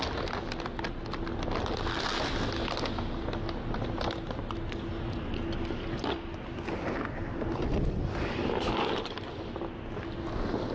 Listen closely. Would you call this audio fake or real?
real